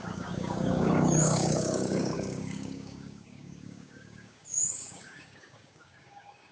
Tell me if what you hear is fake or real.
fake